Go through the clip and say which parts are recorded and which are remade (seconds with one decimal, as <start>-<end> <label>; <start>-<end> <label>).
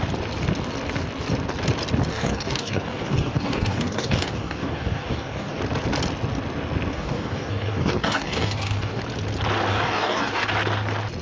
0.0-2.1 recorded; 2.1-5.6 remade; 5.6-6.9 recorded; 6.9-9.0 remade; 9.0-9.7 recorded; 9.7-10.5 remade; 10.5-11.2 recorded